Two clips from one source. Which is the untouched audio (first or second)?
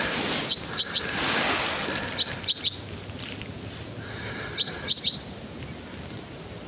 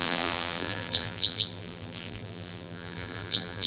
first